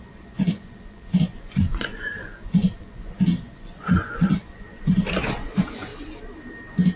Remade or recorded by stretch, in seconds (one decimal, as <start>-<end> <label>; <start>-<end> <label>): 0.0-5.9 remade; 5.9-7.0 recorded